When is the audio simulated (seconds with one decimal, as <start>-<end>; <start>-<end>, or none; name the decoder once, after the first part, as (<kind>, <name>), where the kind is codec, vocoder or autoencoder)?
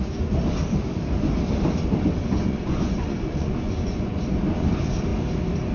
2.4-4.2 (vocoder, Vocos)